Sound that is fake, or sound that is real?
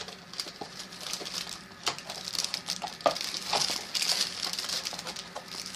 real